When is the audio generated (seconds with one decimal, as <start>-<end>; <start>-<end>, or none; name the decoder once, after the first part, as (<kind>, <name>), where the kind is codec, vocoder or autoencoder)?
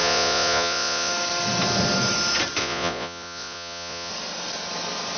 0.0-1.1 (vocoder, Vocos); 2.6-4.1